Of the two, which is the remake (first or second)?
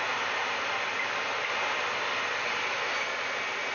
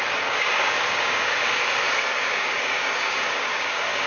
second